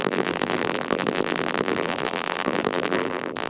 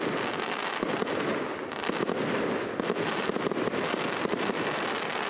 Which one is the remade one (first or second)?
first